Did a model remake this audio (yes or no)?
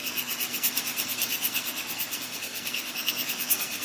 yes